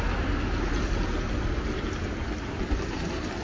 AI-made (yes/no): no